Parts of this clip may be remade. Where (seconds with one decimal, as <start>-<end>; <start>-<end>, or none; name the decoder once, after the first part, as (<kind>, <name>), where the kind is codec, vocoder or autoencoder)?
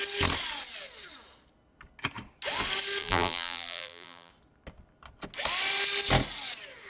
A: 3.0-4.3 (vocoder, BigVGAN v2)